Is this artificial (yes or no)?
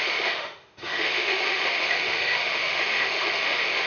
yes